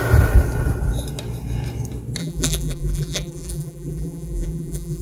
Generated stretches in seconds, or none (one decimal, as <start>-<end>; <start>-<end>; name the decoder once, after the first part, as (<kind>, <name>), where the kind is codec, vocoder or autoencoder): 2.2-5.0 (vocoder, BigVGAN v2)